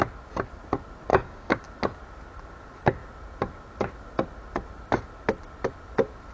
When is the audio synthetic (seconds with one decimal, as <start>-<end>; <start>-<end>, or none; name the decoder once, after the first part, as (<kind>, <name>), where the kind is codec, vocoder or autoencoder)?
1.1-1.6 (codec, DAC)